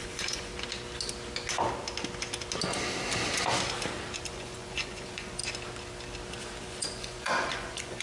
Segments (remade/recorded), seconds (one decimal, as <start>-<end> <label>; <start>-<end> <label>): 0.0-0.5 remade; 0.5-4.3 recorded; 4.3-5.4 remade; 5.4-6.6 recorded; 6.6-8.0 remade